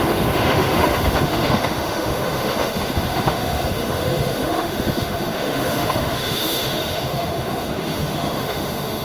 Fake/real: fake